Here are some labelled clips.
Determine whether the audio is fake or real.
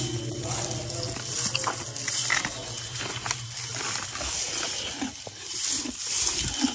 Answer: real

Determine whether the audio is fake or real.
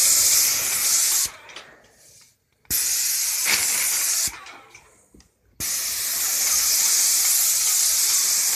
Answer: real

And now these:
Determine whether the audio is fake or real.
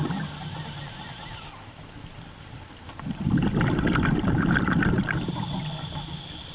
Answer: fake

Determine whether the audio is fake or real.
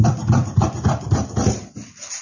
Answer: fake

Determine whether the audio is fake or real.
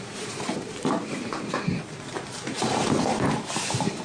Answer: fake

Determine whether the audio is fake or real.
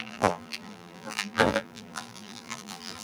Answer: fake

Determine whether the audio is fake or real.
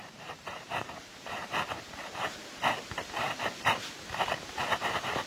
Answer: fake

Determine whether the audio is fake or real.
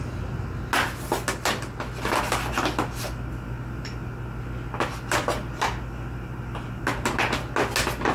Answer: real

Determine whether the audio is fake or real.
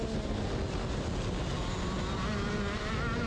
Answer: real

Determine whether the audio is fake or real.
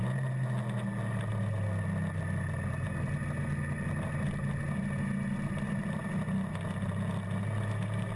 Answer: real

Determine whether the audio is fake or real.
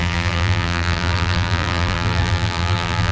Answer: fake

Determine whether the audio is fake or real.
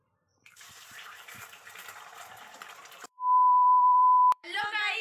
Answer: fake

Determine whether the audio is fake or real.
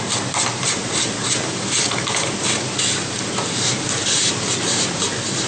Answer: real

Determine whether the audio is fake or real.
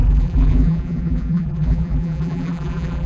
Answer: fake